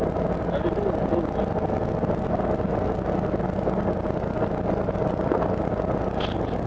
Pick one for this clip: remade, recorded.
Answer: recorded